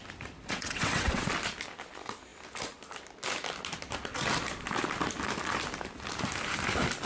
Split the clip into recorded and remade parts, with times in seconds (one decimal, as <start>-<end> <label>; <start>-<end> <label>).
0.0-0.4 recorded; 0.4-1.3 remade; 1.3-7.1 recorded